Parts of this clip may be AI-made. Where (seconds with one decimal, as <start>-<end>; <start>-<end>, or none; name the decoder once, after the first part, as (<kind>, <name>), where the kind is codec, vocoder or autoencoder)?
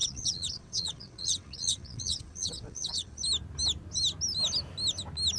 0.0-3.2 (vocoder, WaveNeXt)